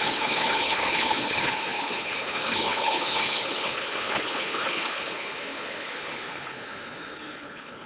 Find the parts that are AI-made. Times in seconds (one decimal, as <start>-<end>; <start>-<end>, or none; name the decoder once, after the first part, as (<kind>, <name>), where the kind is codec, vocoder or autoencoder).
0.0-7.9 (codec, HILCodec)